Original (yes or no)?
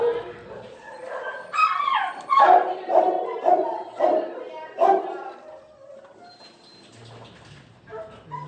yes